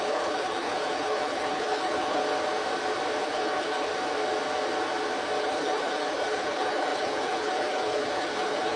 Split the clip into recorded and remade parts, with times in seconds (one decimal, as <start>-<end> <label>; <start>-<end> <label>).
0.0-2.2 remade; 2.2-3.2 recorded; 3.2-3.9 remade; 3.9-5.4 recorded; 5.4-8.8 remade